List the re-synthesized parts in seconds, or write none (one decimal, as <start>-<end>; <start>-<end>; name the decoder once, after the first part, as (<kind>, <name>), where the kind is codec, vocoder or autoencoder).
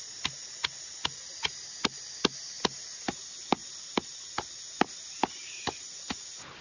none